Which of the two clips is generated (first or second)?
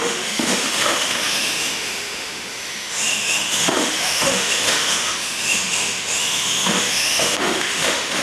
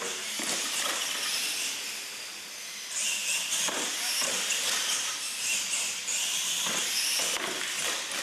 first